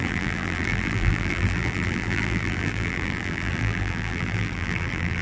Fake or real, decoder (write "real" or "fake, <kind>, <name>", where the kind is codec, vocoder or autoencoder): fake, vocoder, BigVGAN v2